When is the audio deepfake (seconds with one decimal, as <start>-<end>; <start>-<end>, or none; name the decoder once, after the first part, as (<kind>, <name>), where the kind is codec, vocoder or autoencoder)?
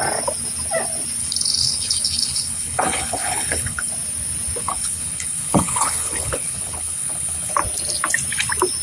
1.2-3.9 (codec, HILCodec); 4.6-7.5